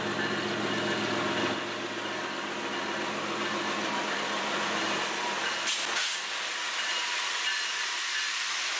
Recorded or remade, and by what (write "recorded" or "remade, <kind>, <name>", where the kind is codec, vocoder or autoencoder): recorded